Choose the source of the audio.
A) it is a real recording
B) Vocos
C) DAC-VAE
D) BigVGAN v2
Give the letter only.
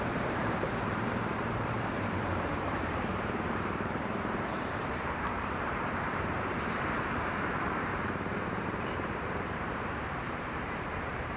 D